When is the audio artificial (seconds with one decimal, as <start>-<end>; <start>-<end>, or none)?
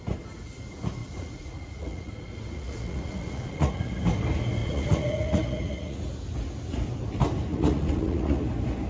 1.0-4.0; 4.6-6.0; 7.5-8.4